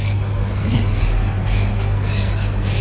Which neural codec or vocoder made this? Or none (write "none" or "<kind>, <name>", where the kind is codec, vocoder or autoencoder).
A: codec, SNAC